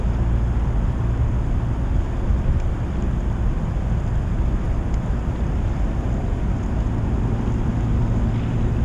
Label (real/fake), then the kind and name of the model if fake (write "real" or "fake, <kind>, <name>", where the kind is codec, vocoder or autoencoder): real